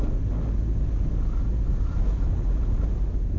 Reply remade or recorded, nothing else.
recorded